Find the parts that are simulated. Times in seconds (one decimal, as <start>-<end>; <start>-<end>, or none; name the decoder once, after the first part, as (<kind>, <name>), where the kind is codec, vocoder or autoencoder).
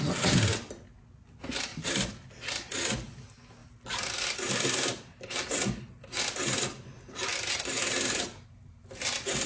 3.6-5.5 (vocoder, BigVGAN v2); 7.3-9.0